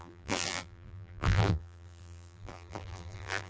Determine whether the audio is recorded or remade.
remade